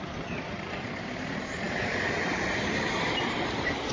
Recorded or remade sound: recorded